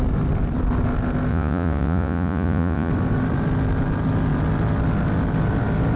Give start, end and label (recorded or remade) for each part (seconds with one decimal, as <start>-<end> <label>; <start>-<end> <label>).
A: 0.0-1.3 recorded; 1.3-2.9 remade; 2.9-6.0 recorded